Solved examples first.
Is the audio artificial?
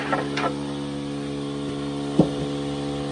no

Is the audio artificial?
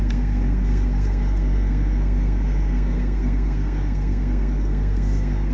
yes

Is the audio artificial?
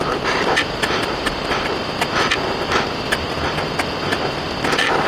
no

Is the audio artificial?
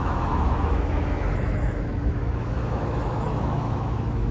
yes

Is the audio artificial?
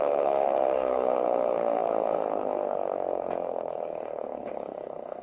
yes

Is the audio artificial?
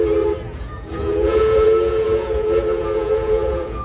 yes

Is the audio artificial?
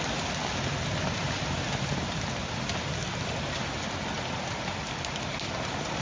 no